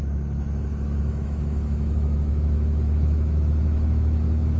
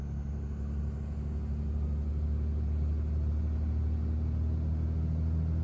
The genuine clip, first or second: second